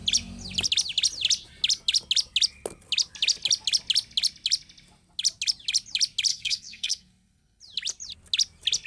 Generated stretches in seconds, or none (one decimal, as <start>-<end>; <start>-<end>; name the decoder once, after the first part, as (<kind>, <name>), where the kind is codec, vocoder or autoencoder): 6.3-7.6 (codec, SNAC)

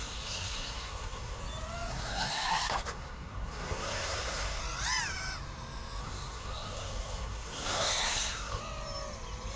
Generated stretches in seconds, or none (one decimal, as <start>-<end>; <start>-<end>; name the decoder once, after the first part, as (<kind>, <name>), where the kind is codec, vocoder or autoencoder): 0.0-1.4 (codec, SNAC); 1.9-4.6; 6.0-8.6